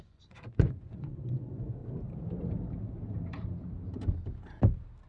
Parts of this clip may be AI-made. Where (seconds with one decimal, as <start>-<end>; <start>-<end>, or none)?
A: 0.0-1.8